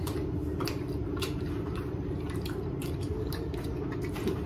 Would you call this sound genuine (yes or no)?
no